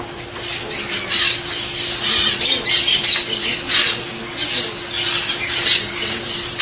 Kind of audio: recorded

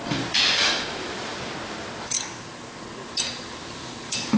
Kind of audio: recorded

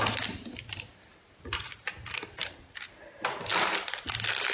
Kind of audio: recorded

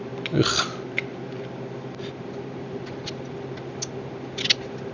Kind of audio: recorded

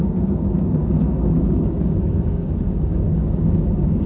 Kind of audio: remade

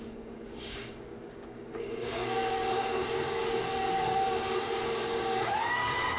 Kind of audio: remade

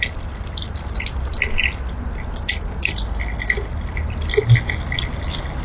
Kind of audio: recorded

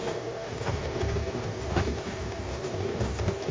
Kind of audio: remade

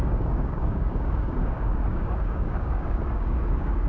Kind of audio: remade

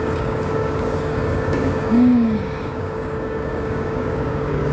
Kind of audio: remade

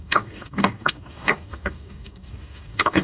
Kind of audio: remade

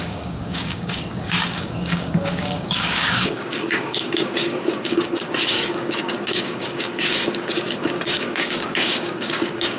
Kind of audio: remade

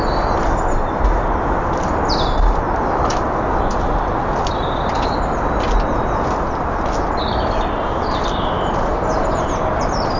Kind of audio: recorded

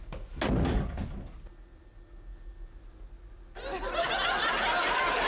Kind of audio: recorded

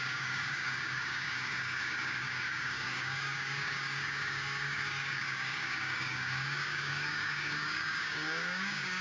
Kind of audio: remade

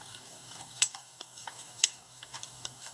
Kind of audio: remade